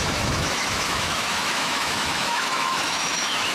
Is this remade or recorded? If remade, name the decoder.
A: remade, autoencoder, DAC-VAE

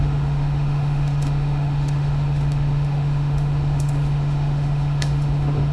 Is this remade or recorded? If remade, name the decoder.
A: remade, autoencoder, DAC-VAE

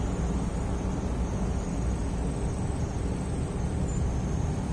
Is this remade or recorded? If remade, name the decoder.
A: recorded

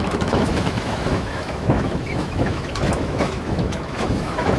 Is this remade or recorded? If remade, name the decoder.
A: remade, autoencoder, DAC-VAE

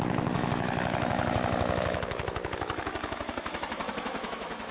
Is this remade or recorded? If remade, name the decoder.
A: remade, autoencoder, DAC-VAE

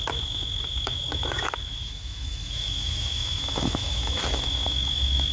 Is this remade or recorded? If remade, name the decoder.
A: remade, autoencoder, DAC-VAE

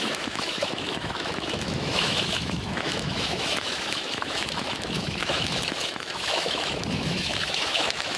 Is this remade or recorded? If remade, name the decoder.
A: remade, autoencoder, DAC-VAE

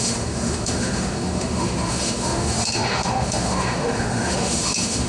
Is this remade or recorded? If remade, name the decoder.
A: remade, autoencoder, DAC-VAE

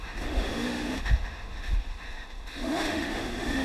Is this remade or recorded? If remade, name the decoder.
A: remade, autoencoder, DAC-VAE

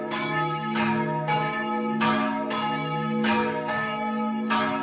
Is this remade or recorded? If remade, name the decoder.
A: remade, autoencoder, DAC-VAE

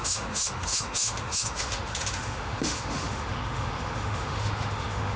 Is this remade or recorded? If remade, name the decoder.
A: remade, autoencoder, DAC-VAE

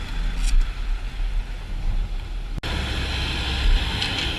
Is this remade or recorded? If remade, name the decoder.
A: recorded